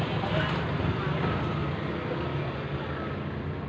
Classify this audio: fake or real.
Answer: real